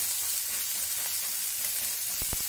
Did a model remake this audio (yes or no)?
no